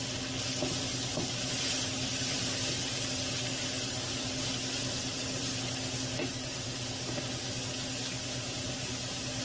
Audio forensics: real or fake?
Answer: real